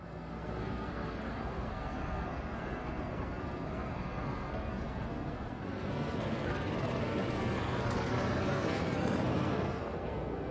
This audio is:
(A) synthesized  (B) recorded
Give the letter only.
A